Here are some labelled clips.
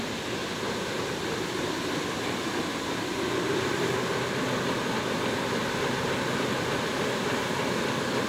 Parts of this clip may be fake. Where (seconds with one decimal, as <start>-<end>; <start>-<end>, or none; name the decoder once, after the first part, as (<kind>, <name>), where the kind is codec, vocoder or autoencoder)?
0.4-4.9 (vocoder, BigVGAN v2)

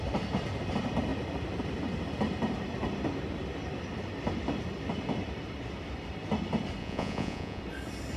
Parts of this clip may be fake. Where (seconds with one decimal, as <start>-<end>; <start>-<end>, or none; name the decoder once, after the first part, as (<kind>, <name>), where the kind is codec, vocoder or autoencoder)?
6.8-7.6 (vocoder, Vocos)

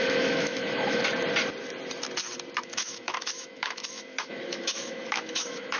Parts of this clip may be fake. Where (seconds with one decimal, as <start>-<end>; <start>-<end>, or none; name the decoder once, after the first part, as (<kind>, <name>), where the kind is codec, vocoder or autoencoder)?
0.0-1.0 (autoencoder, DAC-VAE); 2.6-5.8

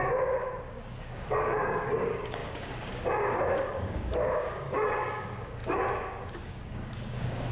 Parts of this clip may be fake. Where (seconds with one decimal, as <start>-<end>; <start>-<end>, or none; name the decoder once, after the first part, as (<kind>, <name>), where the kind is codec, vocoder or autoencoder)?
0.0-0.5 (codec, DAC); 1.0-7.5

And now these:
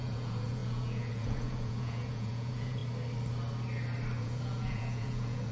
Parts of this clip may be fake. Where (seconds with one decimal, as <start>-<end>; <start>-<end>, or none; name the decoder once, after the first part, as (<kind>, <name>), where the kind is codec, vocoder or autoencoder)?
0.0-2.8 (vocoder, Vocos); 4.2-5.5

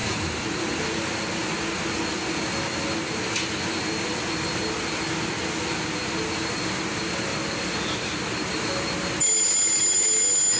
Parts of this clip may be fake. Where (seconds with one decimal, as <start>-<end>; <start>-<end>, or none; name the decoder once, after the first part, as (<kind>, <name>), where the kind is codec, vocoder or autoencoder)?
none

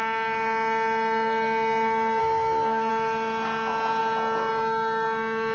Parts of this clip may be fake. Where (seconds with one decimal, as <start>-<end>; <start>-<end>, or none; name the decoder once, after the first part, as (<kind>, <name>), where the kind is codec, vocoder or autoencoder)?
2.2-2.9 (autoencoder, DAC-VAE)

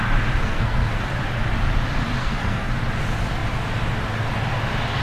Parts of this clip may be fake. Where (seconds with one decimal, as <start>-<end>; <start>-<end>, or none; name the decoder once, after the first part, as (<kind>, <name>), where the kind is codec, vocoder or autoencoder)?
0.4-1.0 (codec, SNAC); 2.2-2.7